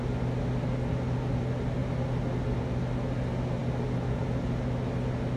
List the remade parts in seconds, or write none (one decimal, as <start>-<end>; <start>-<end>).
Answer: none